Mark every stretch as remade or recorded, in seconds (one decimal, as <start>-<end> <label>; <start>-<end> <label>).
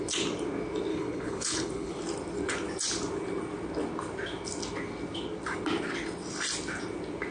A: 0.0-0.9 recorded; 0.9-2.0 remade; 2.0-7.3 recorded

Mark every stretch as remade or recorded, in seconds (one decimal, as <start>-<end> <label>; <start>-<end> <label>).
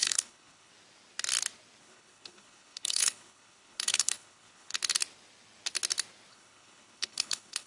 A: 0.0-0.7 remade; 0.7-1.8 recorded; 1.8-4.7 remade; 4.7-6.3 recorded; 6.3-7.7 remade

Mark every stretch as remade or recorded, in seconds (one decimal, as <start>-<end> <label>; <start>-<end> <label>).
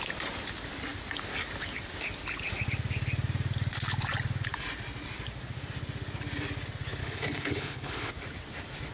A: 0.0-7.0 recorded; 7.0-8.1 remade; 8.1-8.9 recorded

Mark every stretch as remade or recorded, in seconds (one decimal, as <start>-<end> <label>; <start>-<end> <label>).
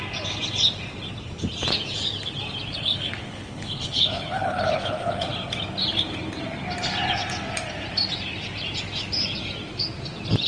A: 0.0-2.7 recorded; 2.7-5.3 remade; 5.3-10.5 recorded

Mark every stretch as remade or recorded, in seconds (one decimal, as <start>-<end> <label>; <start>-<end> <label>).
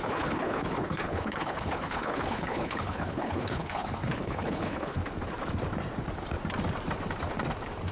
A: 0.0-5.0 remade; 5.0-7.9 recorded